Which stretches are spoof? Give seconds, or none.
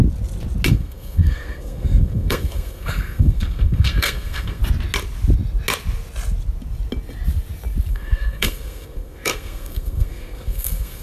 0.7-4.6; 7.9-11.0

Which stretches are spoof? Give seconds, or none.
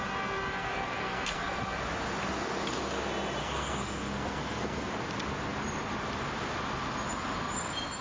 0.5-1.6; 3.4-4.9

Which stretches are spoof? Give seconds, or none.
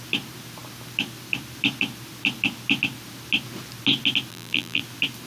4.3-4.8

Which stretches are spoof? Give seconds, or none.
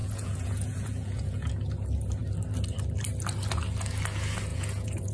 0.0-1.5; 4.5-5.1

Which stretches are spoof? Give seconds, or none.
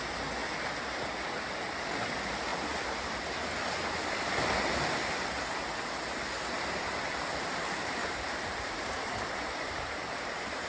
8.0-10.7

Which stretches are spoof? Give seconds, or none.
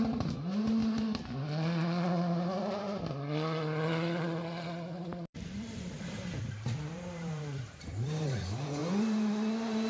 0.0-0.8; 5.3-9.9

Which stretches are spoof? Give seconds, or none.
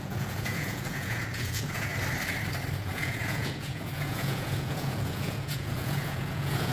0.0-1.9; 2.8-6.7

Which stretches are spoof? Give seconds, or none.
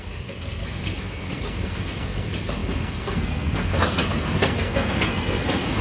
0.0-5.8